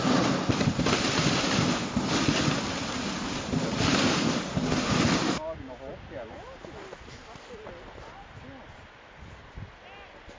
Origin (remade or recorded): recorded